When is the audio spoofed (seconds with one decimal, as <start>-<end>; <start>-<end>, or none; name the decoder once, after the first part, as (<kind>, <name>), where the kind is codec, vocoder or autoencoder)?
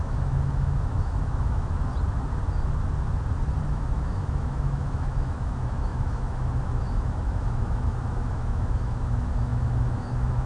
0.0-1.9 (autoencoder, DAC-VAE); 3.6-10.5